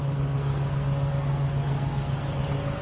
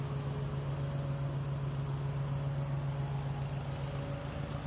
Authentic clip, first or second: second